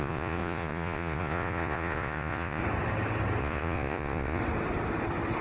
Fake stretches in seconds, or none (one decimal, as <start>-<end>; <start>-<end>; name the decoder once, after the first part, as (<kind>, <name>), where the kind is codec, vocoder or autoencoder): 0.0-2.6 (vocoder, Vocos); 3.4-4.4